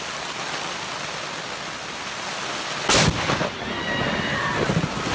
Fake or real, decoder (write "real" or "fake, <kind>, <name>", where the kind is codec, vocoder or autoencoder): real